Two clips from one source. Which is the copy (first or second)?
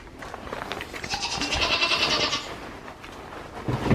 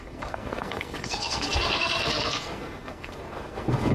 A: second